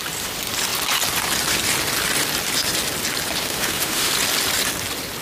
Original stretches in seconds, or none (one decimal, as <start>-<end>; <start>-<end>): 0.0-3.4; 4.1-5.2